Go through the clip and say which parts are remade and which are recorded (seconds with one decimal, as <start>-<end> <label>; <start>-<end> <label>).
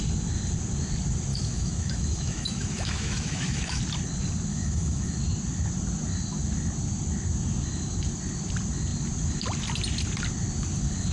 0.0-1.3 recorded; 1.3-3.8 remade; 3.8-4.5 recorded; 4.5-5.2 remade; 5.2-11.1 recorded